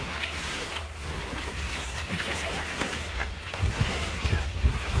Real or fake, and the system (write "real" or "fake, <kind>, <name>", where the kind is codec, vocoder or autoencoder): fake, codec, SNAC